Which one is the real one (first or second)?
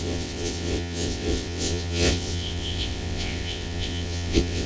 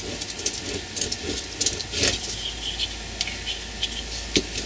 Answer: second